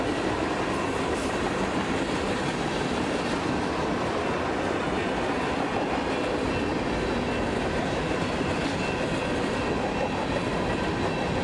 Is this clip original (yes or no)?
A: yes